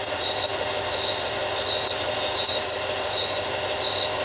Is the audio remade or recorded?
recorded